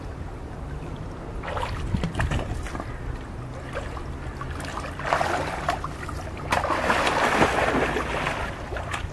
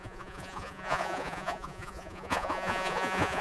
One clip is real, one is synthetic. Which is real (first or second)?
first